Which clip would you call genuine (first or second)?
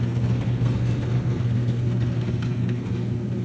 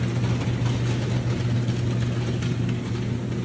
second